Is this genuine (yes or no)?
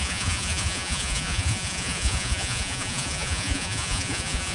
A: no